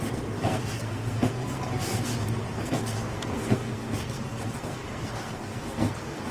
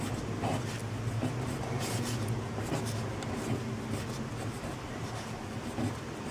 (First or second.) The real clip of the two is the second